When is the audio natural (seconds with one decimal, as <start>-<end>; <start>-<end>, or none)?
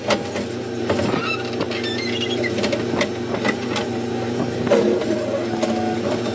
0.0-6.3